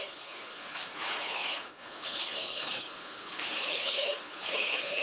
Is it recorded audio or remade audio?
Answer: remade